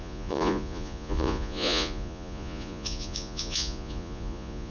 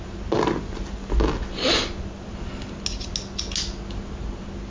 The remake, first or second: first